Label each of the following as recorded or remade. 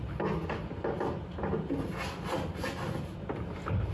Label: recorded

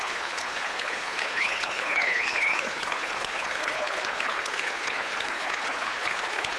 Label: remade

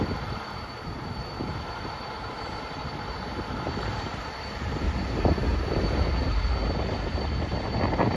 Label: recorded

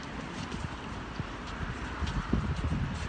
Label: recorded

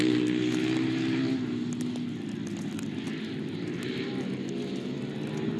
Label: recorded